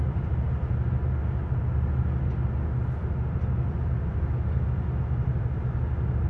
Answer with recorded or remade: recorded